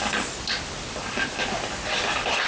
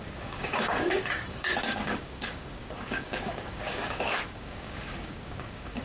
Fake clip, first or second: second